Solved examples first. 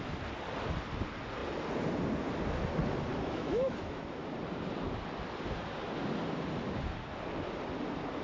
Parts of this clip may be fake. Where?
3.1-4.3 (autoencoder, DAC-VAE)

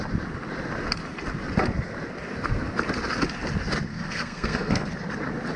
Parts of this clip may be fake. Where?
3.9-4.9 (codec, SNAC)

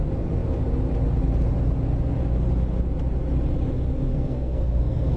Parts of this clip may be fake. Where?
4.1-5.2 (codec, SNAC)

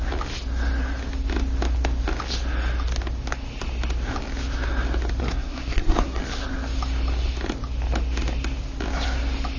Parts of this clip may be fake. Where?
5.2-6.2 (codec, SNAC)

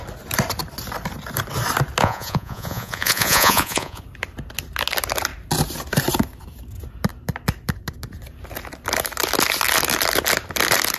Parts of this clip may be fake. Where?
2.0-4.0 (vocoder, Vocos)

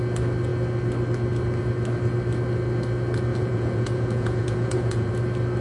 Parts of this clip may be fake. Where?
3.3-5.1 (vocoder, Vocos)